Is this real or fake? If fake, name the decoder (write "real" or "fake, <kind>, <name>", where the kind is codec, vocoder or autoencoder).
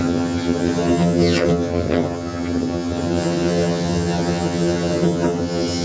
fake, vocoder, HiFi-GAN